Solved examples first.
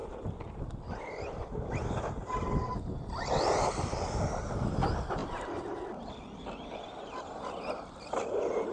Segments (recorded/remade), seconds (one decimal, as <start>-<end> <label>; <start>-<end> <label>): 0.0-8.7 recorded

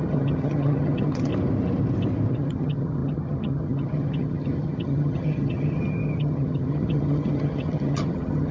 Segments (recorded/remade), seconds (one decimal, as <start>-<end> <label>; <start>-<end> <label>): 0.0-1.3 remade; 1.3-2.3 recorded; 2.3-8.5 remade

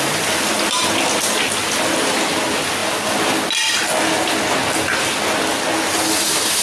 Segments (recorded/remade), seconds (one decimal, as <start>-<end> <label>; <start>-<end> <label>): 0.0-6.6 recorded

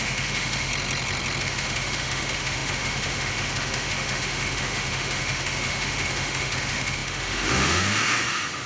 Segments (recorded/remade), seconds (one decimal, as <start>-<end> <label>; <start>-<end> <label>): 0.0-0.7 remade; 0.7-1.4 recorded; 1.4-8.7 remade

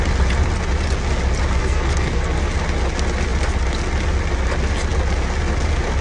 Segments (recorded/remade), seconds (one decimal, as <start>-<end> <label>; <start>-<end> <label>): 0.0-1.6 recorded; 1.6-2.5 remade; 2.5-6.0 recorded